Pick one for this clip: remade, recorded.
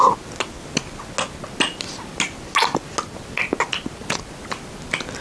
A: recorded